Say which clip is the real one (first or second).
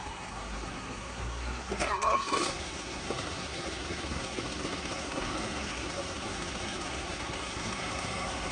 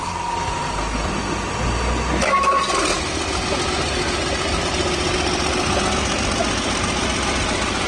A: second